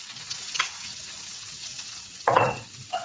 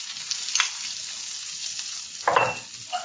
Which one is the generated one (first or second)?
first